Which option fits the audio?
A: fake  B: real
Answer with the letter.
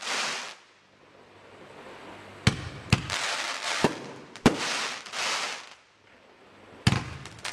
B